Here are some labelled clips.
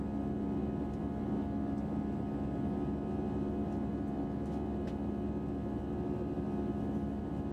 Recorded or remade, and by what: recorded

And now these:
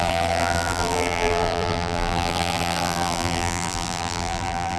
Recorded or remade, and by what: remade, vocoder, BigVGAN v2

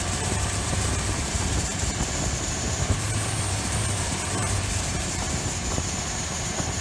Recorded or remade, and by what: remade, vocoder, BigVGAN v2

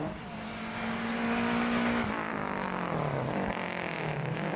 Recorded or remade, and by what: recorded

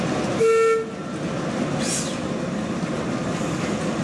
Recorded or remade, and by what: recorded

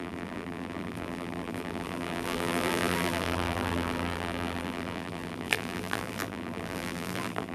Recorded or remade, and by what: remade, vocoder, BigVGAN v2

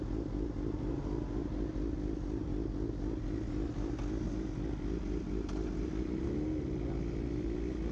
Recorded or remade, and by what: recorded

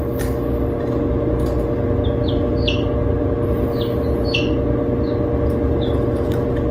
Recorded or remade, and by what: recorded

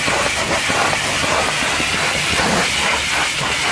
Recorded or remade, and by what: recorded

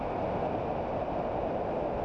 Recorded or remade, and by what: recorded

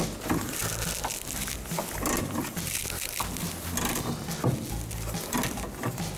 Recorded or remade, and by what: recorded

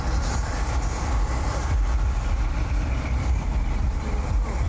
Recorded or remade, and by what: remade, vocoder, BigVGAN v2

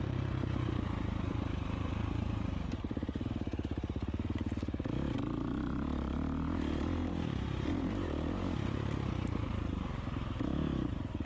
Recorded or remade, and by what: remade, vocoder, BigVGAN v2